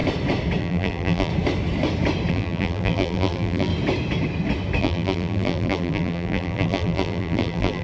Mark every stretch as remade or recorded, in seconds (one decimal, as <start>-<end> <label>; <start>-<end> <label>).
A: 0.0-0.6 recorded; 0.6-1.3 remade; 1.3-2.3 recorded; 2.3-3.7 remade; 3.7-4.8 recorded; 4.8-7.8 remade